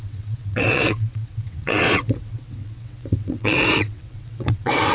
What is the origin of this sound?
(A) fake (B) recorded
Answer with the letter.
A